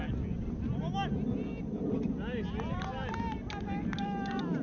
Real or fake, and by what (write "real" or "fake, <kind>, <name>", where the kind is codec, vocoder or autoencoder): real